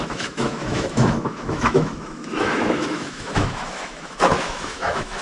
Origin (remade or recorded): remade